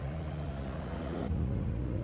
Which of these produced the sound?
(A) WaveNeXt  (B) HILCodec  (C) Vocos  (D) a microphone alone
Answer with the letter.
C